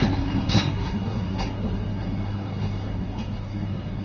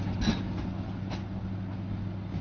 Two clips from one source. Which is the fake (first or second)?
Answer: first